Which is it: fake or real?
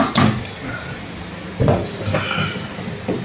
real